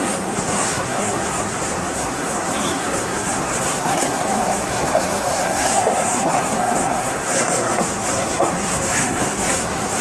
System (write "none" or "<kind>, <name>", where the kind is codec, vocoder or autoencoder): codec, SNAC